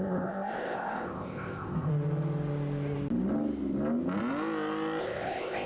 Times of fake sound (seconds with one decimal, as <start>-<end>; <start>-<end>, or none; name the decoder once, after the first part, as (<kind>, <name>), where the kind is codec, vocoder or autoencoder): 0.0-1.9 (codec, ZipCodec); 5.0-5.7